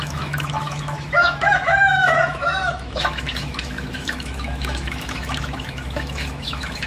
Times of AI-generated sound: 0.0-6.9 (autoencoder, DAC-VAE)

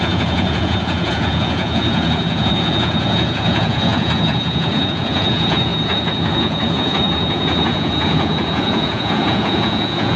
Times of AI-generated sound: 0.0-10.2 (vocoder, Vocos)

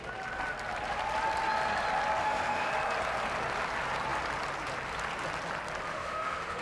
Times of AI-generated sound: 2.2-2.7 (autoencoder, DAC-VAE); 5.9-6.6

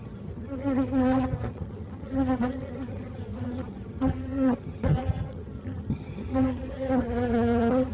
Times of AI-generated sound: 0.0-7.9 (vocoder, HiFi-GAN)

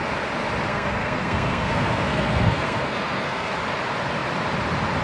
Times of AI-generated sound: 0.7-3.5 (codec, SNAC)